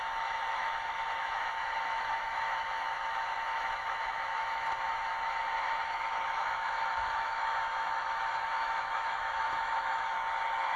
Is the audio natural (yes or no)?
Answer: no